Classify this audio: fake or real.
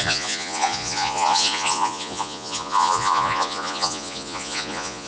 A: fake